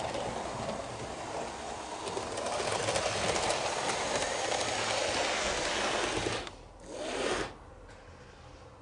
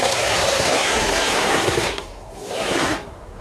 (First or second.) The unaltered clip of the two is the first